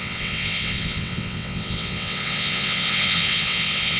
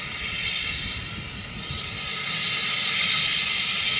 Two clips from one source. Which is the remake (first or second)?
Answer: first